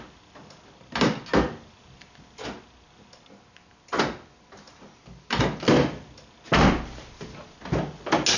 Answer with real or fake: real